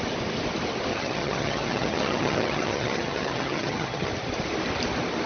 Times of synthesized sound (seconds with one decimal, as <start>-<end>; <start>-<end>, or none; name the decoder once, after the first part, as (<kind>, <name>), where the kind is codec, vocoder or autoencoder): 0.9-4.1 (vocoder, HiFi-GAN)

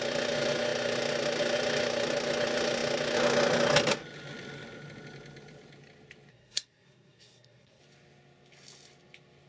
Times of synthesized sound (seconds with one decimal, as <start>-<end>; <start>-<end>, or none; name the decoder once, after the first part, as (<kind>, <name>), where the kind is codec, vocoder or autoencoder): 6.3-7.8 (codec, SNAC)

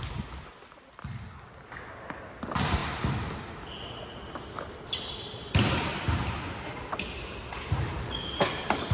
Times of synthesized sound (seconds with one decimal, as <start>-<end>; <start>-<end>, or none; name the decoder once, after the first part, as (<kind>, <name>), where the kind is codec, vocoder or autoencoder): none